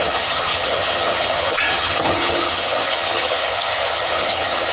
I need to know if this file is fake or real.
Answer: fake